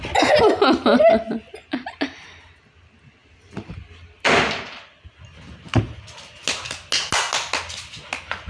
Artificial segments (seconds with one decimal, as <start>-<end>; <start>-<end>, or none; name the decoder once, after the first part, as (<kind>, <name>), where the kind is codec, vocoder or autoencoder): 3.2-5.4 (vocoder, BigVGAN v2)